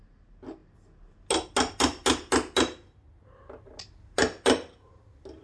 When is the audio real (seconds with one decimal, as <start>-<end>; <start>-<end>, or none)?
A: 0.0-5.4